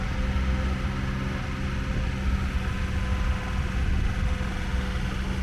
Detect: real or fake real